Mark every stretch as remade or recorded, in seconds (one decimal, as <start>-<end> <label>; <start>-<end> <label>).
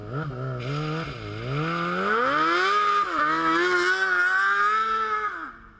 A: 0.0-5.8 recorded